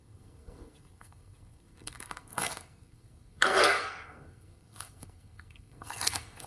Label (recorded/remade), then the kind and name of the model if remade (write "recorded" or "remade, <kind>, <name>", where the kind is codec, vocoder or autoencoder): remade, codec, SNAC